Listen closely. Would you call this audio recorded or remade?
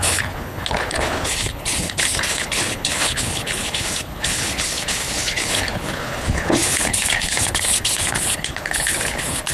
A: remade